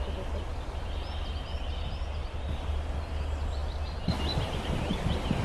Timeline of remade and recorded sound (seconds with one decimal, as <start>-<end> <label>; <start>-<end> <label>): 0.0-5.4 recorded